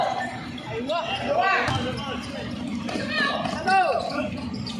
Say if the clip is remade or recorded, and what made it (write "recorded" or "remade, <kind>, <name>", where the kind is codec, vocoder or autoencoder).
recorded